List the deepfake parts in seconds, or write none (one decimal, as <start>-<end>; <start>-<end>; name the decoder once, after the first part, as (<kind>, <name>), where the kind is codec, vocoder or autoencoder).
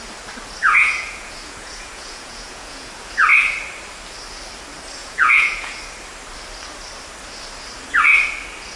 0.6-2.9 (vocoder, Vocos); 5.0-5.8